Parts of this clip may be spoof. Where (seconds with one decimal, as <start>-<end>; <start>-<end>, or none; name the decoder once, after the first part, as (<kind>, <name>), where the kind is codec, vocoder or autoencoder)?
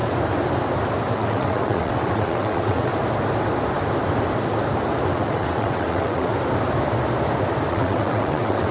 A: 1.1-2.9 (vocoder, WaveNeXt); 5.1-6.3; 7.7-8.7